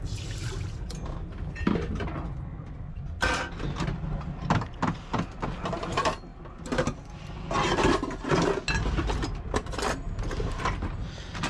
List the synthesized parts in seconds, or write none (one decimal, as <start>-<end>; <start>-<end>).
none